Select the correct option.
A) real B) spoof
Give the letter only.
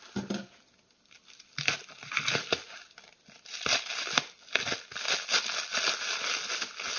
A